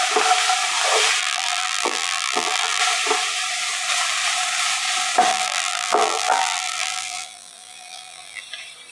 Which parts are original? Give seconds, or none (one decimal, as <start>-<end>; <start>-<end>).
0.0-1.2; 2.8-5.3; 8.4-8.9